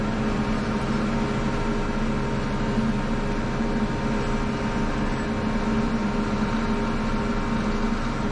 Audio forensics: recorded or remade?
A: recorded